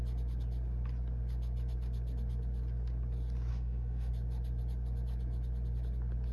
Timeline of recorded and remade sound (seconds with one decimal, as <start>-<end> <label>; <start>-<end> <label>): 0.0-3.5 recorded; 3.5-4.1 remade; 4.1-6.3 recorded